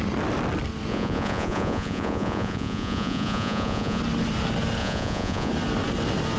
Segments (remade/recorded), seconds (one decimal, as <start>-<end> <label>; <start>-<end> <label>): 0.0-0.9 recorded; 0.9-4.0 remade; 4.0-4.8 recorded; 4.8-5.5 remade; 5.5-6.4 recorded